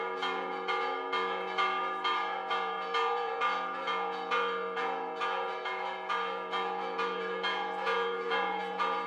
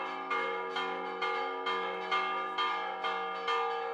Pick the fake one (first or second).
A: first